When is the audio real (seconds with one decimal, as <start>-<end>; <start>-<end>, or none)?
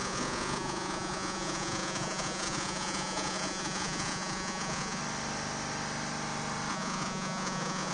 5.0-6.7